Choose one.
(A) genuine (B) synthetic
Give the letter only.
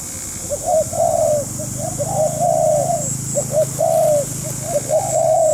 A